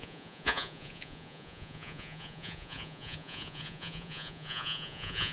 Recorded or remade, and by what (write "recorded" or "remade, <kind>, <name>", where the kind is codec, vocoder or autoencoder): remade, vocoder, Vocos